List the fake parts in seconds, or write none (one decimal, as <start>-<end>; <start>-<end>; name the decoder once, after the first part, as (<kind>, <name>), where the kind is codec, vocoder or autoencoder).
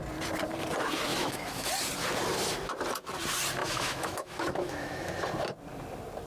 1.1-1.7 (autoencoder, DAC-VAE); 3.6-5.1